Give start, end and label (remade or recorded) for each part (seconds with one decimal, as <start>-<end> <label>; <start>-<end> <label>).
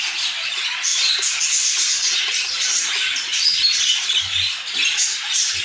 0.0-5.6 recorded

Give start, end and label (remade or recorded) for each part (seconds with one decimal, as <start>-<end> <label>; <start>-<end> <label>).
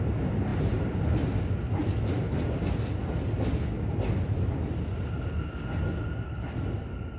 0.0-7.2 recorded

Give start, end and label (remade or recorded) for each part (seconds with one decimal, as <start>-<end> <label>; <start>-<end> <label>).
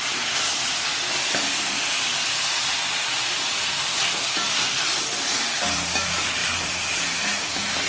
0.0-6.4 recorded; 6.4-7.5 remade; 7.5-7.9 recorded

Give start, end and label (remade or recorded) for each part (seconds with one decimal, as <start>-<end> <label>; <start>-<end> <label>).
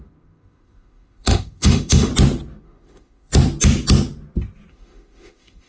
0.0-2.1 remade; 2.1-2.6 recorded; 2.6-3.3 remade; 3.3-4.7 recorded; 4.7-5.7 remade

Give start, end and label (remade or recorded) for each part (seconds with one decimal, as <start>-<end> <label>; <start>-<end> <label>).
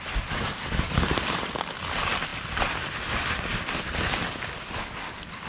0.0-1.5 remade; 1.5-5.5 recorded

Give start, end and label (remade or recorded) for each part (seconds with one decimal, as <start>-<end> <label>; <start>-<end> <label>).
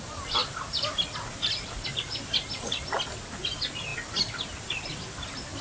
0.0-5.6 recorded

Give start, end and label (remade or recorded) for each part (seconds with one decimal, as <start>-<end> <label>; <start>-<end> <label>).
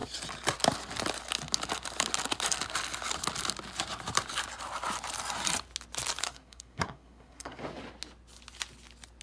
0.0-6.2 recorded; 6.2-7.6 remade; 7.6-9.2 recorded